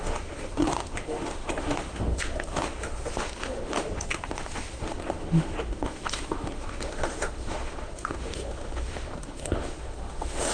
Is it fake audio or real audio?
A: fake